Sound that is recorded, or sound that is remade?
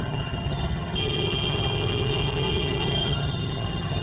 remade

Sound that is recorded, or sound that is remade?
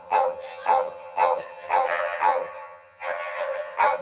remade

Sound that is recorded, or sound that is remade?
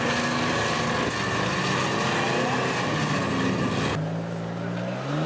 recorded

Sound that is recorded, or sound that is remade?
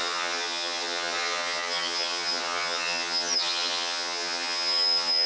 remade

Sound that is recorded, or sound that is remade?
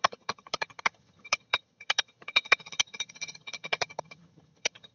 remade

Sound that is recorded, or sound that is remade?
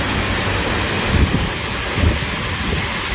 recorded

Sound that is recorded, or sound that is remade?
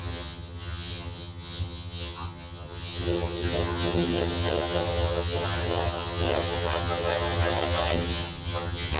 remade